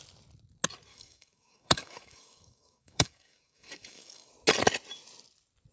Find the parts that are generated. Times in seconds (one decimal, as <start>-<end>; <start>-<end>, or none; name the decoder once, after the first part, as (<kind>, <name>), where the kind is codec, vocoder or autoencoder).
0.9-4.3 (codec, DAC)